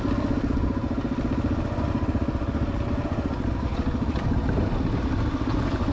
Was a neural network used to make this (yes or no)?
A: no